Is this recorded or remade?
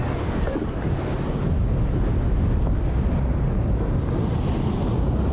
recorded